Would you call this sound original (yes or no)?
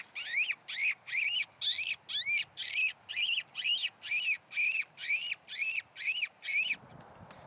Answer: yes